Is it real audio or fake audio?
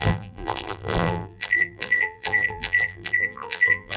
fake